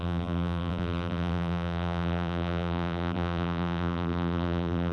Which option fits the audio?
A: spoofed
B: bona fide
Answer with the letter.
A